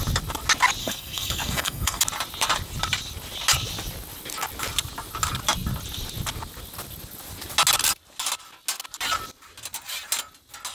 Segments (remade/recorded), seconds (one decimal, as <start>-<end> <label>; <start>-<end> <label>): 0.0-0.8 recorded; 0.8-2.0 remade; 2.0-10.7 recorded